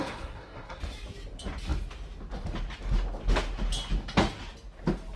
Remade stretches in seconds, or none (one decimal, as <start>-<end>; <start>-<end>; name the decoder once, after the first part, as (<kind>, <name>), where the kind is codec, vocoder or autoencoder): 0.0-0.8 (codec, SNAC)